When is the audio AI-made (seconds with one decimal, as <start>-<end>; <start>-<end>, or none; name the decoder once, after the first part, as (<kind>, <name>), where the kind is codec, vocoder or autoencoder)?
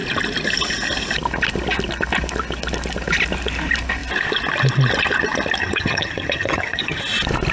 5.6-7.0 (vocoder, HiFi-GAN)